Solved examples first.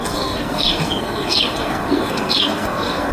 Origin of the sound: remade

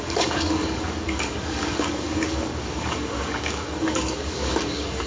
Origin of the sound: remade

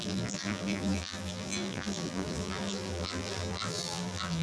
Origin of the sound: remade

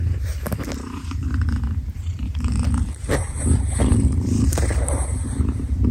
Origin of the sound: remade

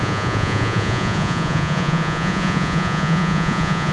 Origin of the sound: remade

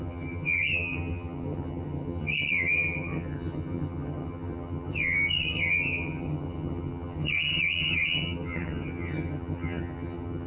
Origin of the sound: remade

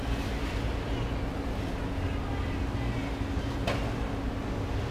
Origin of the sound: recorded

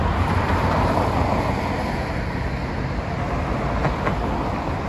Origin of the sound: recorded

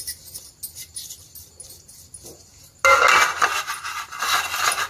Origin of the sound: recorded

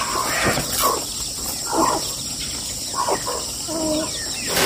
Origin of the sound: recorded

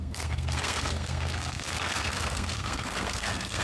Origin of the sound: remade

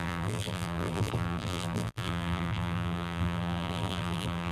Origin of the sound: remade